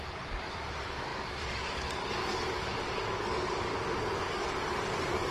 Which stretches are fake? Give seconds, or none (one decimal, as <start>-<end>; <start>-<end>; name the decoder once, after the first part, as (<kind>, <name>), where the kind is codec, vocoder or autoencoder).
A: 0.0-3.7 (codec, DAC); 4.3-5.3